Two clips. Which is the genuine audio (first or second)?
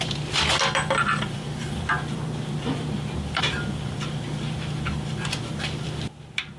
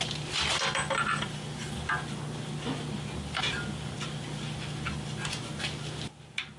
second